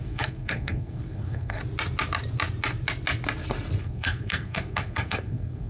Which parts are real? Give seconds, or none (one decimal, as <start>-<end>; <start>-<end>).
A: 1.6-3.8